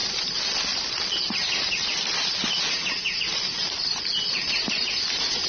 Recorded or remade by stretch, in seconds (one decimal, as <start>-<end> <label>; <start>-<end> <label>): 0.0-2.7 recorded; 2.7-5.5 remade